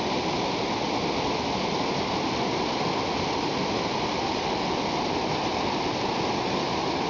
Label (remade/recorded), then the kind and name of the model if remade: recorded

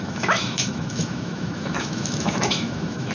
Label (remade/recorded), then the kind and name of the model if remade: remade, autoencoder, DAC-VAE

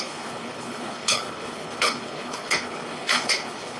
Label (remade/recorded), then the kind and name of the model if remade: remade, codec, HILCodec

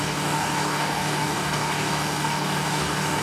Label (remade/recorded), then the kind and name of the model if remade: remade, codec, DAC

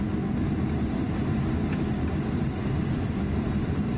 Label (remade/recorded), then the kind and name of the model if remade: recorded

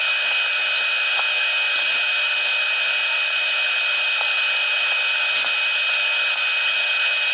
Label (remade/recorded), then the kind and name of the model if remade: recorded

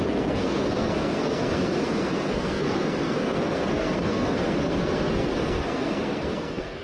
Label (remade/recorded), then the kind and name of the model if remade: remade, codec, SNAC